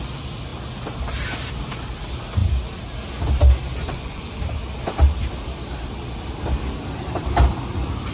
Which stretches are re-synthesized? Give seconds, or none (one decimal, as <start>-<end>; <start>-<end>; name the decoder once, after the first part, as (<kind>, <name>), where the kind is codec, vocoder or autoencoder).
3.8-4.4 (vocoder, Vocos)